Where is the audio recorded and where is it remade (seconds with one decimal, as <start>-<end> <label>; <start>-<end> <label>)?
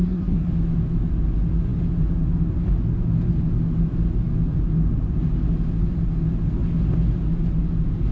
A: 0.0-0.5 remade; 0.5-8.1 recorded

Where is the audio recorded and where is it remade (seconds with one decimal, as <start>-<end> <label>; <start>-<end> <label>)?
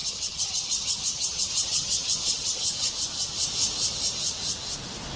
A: 0.0-2.9 remade; 2.9-5.2 recorded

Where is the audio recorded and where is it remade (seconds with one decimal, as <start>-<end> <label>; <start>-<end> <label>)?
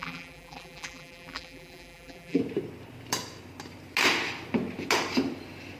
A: 0.0-2.4 remade; 2.4-5.8 recorded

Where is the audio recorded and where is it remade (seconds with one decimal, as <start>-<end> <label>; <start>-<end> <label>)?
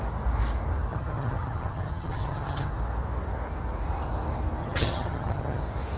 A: 0.0-0.9 recorded; 0.9-2.7 remade; 2.7-4.6 recorded; 4.6-5.6 remade; 5.6-6.0 recorded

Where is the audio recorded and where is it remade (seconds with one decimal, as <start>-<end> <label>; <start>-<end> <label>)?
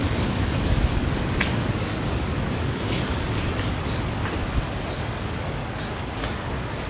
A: 0.0-4.2 remade; 4.2-5.2 recorded; 5.2-6.9 remade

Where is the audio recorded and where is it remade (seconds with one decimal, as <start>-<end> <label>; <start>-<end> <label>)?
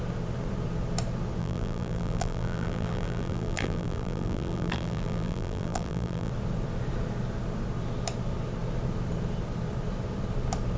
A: 0.0-1.4 recorded; 1.4-6.3 remade; 6.3-10.8 recorded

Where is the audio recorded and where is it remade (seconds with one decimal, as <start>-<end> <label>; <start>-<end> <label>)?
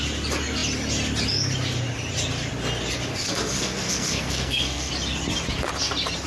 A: 0.0-3.2 recorded; 3.2-4.9 remade; 4.9-6.3 recorded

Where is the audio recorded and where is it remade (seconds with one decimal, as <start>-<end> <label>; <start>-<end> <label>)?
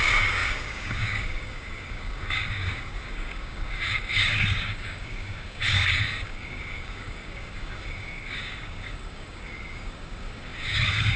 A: 0.0-11.2 remade